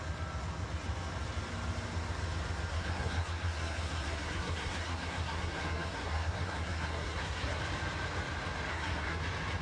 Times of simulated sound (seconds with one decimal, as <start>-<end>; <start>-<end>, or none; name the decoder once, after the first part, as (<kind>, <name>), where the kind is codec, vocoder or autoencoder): 2.7-7.6 (codec, SNAC); 8.7-9.2

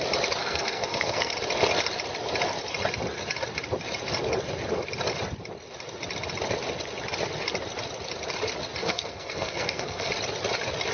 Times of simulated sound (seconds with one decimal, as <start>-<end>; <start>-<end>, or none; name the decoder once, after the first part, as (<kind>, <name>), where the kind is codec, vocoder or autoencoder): 0.4-1.3 (codec, SNAC); 8.8-10.1

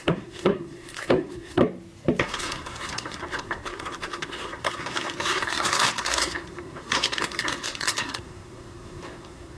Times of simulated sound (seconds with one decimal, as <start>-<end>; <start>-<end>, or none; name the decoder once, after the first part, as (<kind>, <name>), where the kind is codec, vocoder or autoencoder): 0.0-1.6 (codec, SNAC); 2.2-9.6

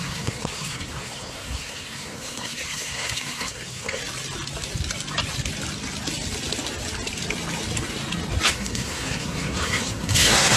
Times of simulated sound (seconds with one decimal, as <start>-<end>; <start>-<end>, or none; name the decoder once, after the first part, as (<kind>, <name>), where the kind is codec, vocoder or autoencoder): 0.0-4.0 (codec, SNAC); 8.5-10.6

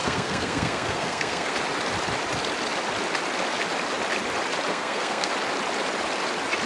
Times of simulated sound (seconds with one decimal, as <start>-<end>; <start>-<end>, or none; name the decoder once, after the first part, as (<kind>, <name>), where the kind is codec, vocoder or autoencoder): 0.0-1.5 (codec, SNAC); 4.7-5.3

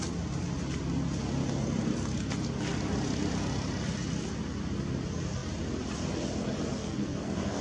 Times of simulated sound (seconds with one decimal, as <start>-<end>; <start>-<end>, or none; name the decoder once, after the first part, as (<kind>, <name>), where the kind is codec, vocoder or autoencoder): 6.8-7.6 (codec, SNAC)